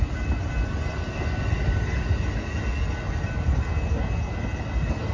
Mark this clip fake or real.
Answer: real